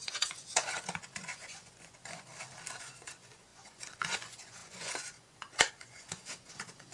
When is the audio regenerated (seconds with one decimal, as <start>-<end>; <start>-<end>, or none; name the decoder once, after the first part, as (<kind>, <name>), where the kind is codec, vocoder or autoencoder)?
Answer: 0.0-2.3 (vocoder, Vocos); 2.8-6.9